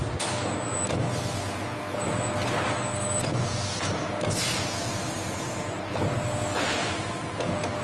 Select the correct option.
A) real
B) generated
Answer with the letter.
A